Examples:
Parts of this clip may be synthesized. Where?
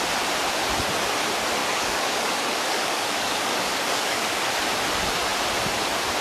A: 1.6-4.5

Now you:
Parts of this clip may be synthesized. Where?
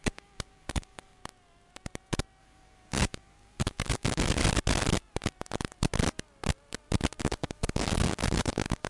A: 0.0-1.2; 2.4-4.4; 7.2-8.9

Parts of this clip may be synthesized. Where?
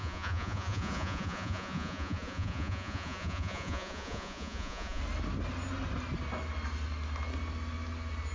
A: 0.0-5.0